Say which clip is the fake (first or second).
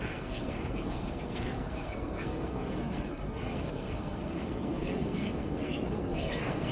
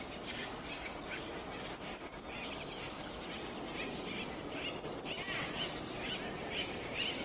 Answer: first